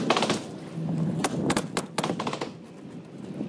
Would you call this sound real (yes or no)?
yes